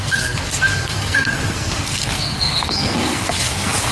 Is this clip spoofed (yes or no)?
yes